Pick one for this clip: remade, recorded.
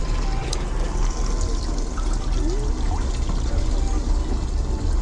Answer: recorded